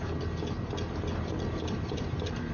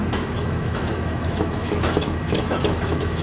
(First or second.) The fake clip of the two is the second